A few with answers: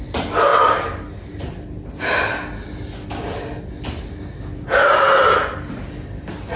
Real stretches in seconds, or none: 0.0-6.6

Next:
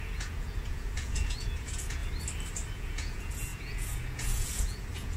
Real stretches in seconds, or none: 2.0-2.7

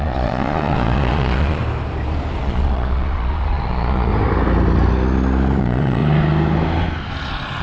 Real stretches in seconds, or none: 1.6-2.4; 4.1-5.6; 6.0-7.6

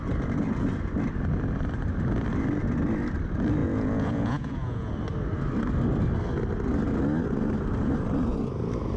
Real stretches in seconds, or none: 0.0-3.6; 4.9-9.0

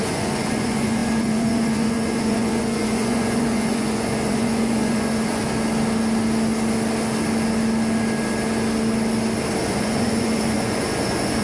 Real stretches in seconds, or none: 5.4-9.6

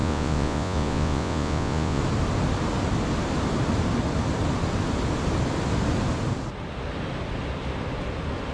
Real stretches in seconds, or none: 2.0-8.5

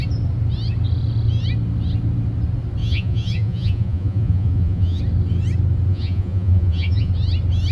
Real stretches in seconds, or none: 0.0-2.8; 5.0-5.9; 7.1-7.7

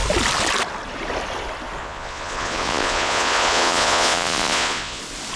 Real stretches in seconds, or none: 0.0-1.8; 5.0-5.4